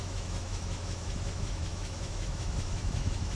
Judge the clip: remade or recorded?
remade